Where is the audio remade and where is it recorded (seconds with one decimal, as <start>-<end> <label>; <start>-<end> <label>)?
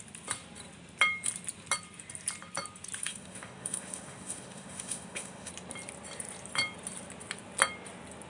0.0-3.0 recorded; 3.0-5.5 remade; 5.5-8.3 recorded